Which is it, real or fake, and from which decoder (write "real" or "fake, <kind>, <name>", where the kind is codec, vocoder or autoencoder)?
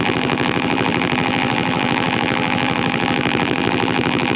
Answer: fake, vocoder, BigVGAN v2